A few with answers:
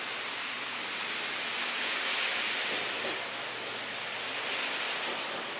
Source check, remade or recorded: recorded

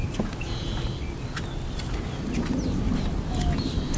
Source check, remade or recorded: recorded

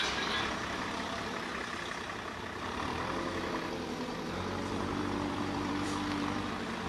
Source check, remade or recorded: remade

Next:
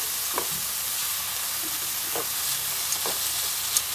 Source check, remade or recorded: recorded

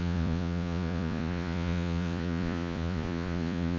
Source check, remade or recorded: remade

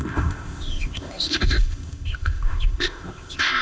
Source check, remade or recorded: remade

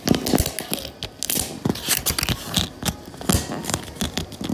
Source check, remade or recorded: recorded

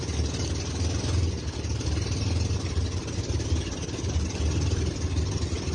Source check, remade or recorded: recorded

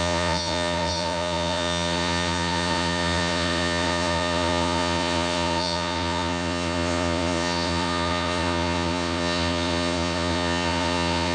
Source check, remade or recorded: remade